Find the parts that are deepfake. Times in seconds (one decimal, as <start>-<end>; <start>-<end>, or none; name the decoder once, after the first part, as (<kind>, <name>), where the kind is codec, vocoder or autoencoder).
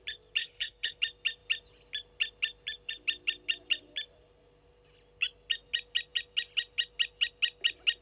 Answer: 0.4-1.0 (codec, HILCodec)